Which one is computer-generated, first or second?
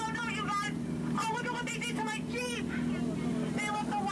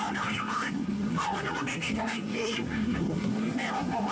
second